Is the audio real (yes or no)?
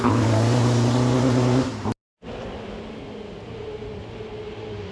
yes